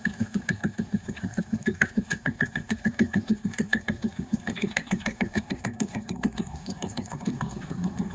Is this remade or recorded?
remade